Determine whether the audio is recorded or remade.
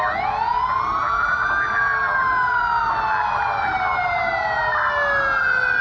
recorded